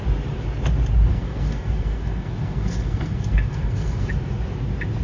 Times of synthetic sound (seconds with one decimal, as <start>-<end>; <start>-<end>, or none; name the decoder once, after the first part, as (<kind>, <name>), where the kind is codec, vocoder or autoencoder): 1.1-4.1 (codec, SNAC)